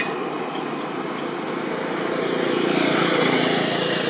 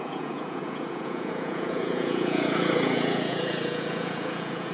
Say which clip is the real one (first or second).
first